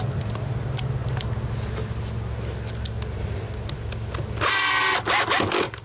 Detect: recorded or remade recorded